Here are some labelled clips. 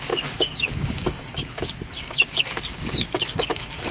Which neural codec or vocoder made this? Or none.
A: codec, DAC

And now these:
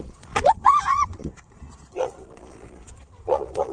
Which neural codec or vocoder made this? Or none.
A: vocoder, Vocos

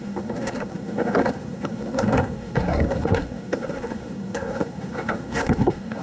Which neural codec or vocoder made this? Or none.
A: codec, SNAC